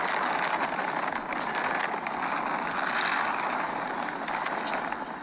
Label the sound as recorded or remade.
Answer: recorded